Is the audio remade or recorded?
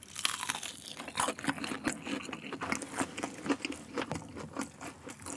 recorded